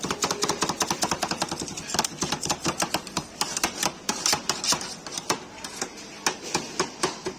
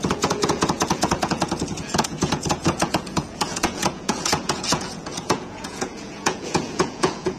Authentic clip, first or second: first